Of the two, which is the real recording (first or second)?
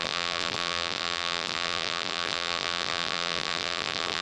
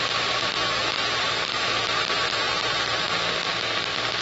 second